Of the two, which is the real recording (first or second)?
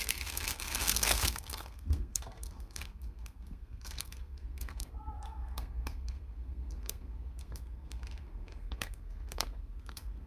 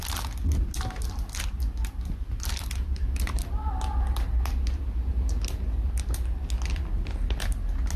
second